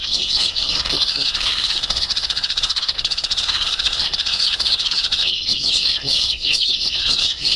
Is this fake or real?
fake